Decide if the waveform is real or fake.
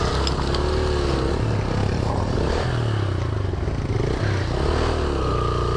real